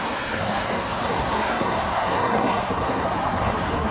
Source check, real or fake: fake